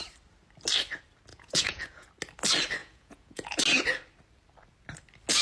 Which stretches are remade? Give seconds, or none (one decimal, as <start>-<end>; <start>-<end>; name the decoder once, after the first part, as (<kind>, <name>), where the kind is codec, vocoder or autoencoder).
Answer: 1.3-2.1 (vocoder, Vocos); 2.8-3.6